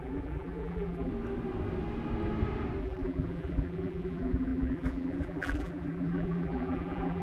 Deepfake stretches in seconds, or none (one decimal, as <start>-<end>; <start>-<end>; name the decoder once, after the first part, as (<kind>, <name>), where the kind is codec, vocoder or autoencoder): 0.0-1.1 (vocoder, BigVGAN v2); 2.8-7.2